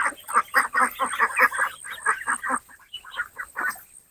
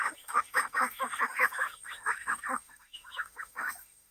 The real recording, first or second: first